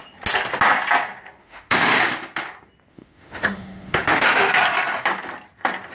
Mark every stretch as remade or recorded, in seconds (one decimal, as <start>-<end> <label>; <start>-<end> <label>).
0.0-1.4 recorded; 1.4-2.0 remade; 2.0-2.9 recorded; 2.9-4.5 remade; 4.5-5.9 recorded

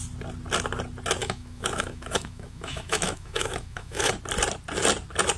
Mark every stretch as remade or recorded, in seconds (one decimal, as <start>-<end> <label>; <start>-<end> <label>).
0.0-1.2 recorded; 1.2-4.1 remade; 4.1-5.4 recorded

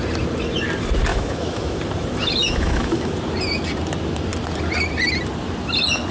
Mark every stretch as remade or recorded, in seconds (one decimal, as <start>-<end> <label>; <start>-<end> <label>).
0.0-1.1 recorded; 1.1-1.8 remade; 1.8-2.4 recorded; 2.4-3.1 remade; 3.1-6.1 recorded

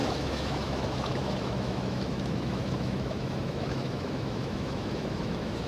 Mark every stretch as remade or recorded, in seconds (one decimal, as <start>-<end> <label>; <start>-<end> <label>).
0.0-5.7 remade

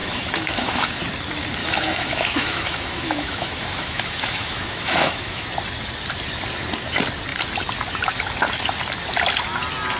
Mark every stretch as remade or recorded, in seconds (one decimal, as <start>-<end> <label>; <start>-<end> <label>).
0.0-1.0 remade; 1.0-1.6 recorded; 1.6-5.4 remade; 5.4-10.0 recorded

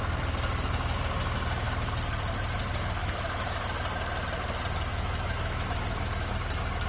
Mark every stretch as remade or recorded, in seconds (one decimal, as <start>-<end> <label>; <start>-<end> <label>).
0.0-3.0 recorded; 3.0-3.6 remade; 3.6-4.9 recorded; 4.9-6.3 remade; 6.3-6.9 recorded